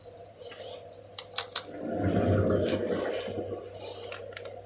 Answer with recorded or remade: recorded